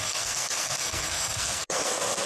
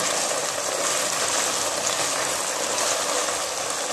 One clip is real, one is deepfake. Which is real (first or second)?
second